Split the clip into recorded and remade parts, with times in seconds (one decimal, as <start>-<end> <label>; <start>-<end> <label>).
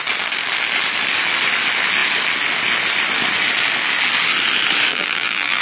0.0-4.9 recorded; 4.9-5.6 remade